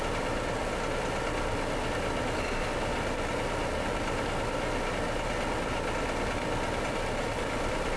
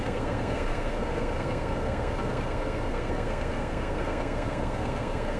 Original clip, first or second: first